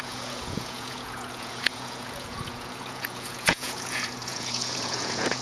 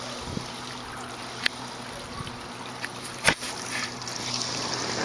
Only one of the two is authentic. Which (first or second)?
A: second